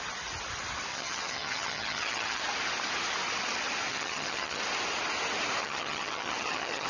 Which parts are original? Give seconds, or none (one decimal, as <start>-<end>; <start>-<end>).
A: 0.0-0.9; 2.4-3.9; 4.6-5.6